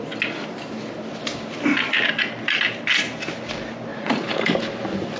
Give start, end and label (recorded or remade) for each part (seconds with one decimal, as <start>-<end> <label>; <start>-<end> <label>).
0.0-3.9 recorded; 3.9-4.4 remade; 4.4-5.2 recorded